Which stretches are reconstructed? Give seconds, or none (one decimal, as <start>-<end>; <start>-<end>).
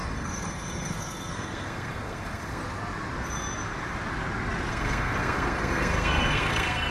0.0-2.6; 4.7-6.9